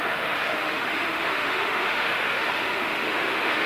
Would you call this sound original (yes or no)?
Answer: no